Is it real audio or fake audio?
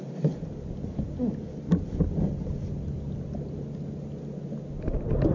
real